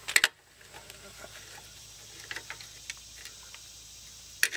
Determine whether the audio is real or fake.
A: real